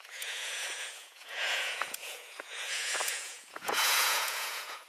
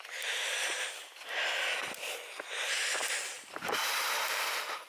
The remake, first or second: first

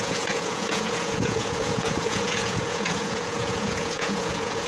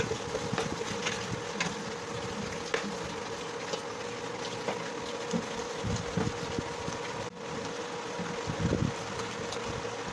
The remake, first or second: first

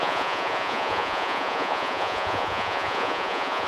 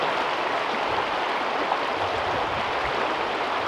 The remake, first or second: first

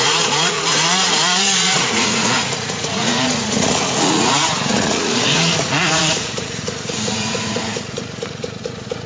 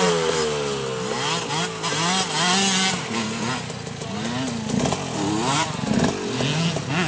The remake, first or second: first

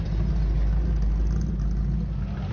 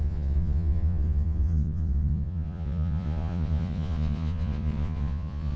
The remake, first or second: second